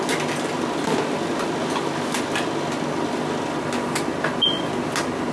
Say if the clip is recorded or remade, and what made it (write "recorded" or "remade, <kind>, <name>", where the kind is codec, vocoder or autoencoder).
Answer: recorded